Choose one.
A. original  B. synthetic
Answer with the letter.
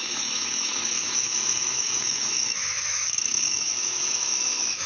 B